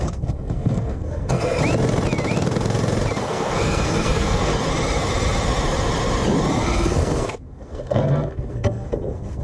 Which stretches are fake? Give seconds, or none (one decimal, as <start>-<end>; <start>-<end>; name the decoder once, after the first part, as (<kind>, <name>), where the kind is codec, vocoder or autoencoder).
0.0-1.6 (codec, SNAC); 3.2-4.5; 6.6-9.4